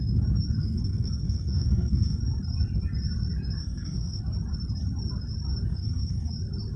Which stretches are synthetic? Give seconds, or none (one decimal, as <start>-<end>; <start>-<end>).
0.6-2.2; 3.6-4.2; 5.7-6.3

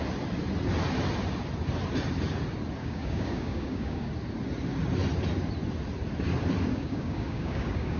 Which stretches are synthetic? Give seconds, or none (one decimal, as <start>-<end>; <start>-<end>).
2.8-4.1; 6.7-8.0